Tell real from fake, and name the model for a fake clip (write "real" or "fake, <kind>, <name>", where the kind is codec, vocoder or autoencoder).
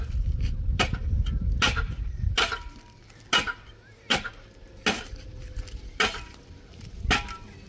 real